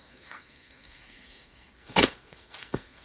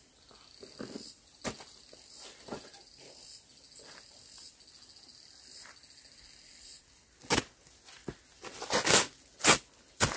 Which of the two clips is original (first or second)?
second